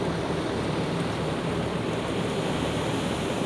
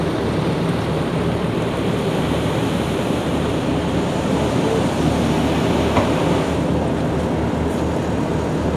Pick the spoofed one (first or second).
second